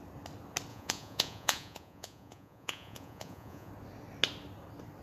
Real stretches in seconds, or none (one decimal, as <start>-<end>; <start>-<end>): 0.0-0.7; 3.7-5.0